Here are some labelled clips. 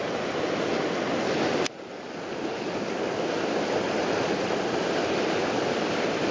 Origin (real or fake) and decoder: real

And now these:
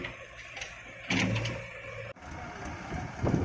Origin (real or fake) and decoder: real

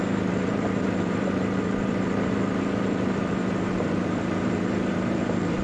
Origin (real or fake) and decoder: fake, vocoder, BigVGAN v2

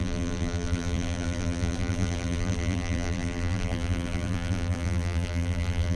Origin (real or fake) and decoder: fake, vocoder, BigVGAN v2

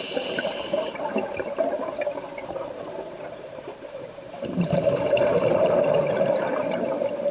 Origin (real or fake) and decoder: fake, vocoder, BigVGAN v2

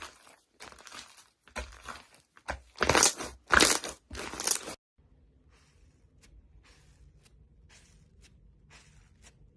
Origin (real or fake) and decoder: real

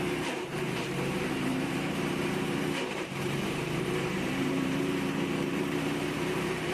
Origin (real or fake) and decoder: fake, vocoder, BigVGAN v2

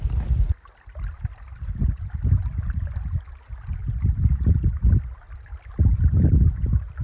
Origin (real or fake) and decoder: real